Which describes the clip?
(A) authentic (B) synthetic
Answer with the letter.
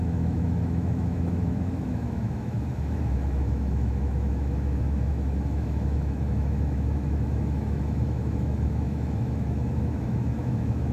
B